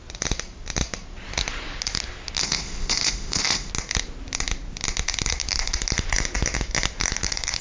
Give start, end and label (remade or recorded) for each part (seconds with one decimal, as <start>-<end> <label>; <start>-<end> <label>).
0.0-2.4 recorded; 2.4-3.7 remade; 3.7-7.6 recorded